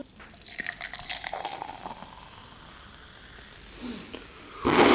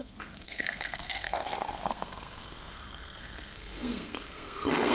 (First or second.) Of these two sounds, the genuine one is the first